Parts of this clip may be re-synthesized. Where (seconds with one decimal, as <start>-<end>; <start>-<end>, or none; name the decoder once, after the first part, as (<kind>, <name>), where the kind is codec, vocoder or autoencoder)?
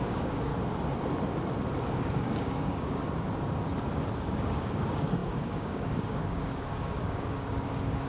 0.0-0.5 (codec, DAC); 1.9-3.0; 4.2-8.1